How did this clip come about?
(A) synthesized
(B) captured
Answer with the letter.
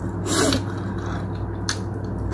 B